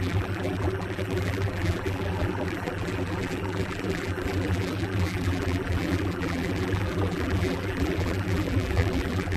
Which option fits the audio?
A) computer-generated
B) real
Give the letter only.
A